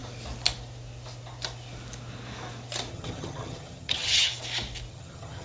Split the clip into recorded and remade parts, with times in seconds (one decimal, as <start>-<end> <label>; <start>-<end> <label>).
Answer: 0.0-2.9 recorded; 2.9-4.3 remade; 4.3-4.9 recorded; 4.9-5.4 remade